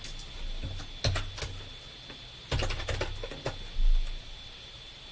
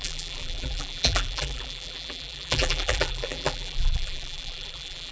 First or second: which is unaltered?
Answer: first